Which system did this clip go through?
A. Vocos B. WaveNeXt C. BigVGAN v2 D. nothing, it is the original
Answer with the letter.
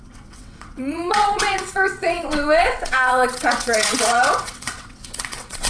B